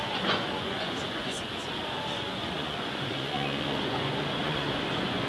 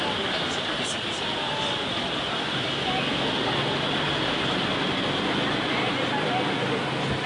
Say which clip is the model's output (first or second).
first